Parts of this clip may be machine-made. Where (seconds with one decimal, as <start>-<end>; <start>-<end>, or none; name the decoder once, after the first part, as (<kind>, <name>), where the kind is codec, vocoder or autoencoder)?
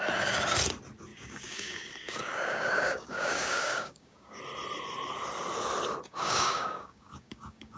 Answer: 1.1-4.4 (codec, DAC); 6.1-7.8